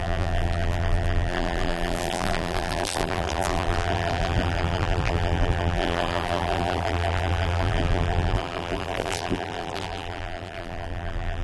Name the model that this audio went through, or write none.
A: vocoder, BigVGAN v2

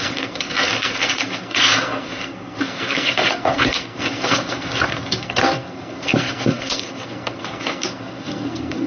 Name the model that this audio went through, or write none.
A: codec, SNAC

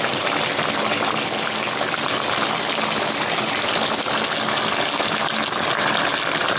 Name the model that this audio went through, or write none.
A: none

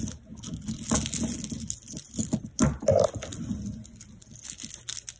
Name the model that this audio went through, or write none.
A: none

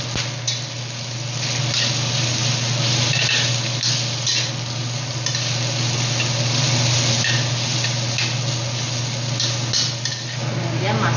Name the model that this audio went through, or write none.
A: none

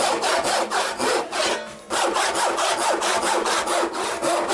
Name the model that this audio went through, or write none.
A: none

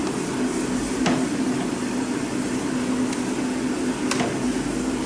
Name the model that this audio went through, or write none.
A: none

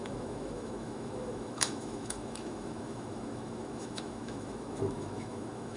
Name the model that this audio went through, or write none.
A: autoencoder, DAC-VAE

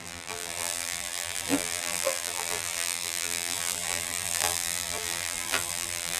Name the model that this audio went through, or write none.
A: vocoder, BigVGAN v2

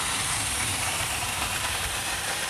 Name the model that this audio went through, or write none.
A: vocoder, BigVGAN v2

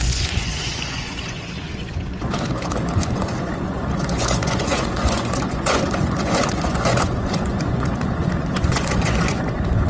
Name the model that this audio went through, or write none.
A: vocoder, Vocos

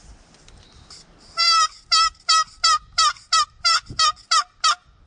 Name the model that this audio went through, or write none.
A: none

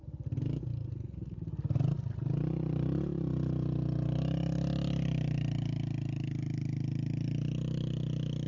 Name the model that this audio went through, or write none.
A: none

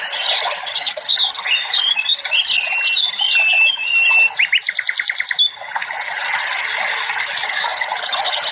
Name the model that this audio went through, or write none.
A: none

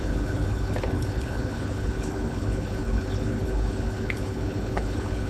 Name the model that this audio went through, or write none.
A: codec, HILCodec